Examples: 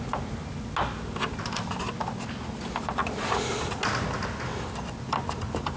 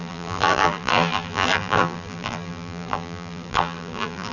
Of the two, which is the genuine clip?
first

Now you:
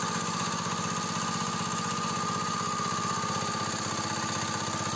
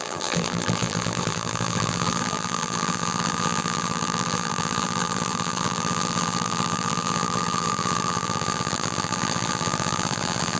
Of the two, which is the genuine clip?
first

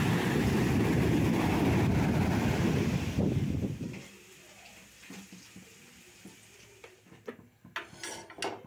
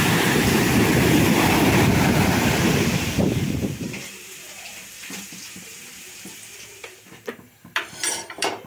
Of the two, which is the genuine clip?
first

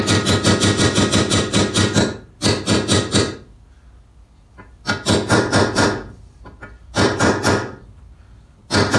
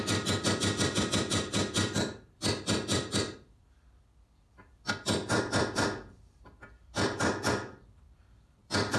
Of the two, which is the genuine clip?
first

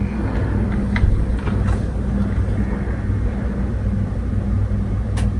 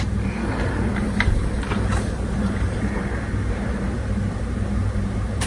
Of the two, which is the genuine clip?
first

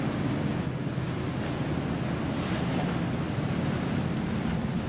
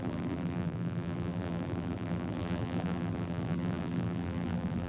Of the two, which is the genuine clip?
first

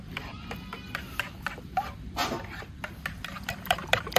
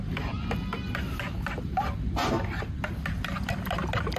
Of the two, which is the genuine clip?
second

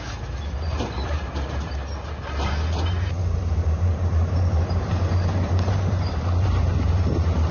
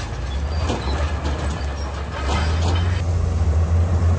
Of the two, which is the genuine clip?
second